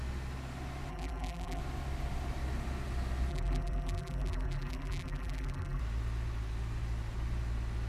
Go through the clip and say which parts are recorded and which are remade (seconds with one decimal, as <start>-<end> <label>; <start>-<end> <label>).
0.0-0.9 recorded; 0.9-1.6 remade; 1.6-3.3 recorded; 3.3-5.8 remade; 5.8-7.9 recorded

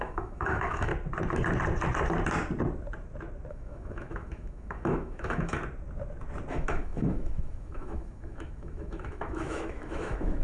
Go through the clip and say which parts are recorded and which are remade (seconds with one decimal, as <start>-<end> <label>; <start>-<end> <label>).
0.0-0.9 remade; 0.9-3.5 recorded; 3.5-5.6 remade; 5.6-6.5 recorded; 6.5-10.4 remade